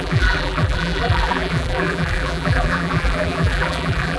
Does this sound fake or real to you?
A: fake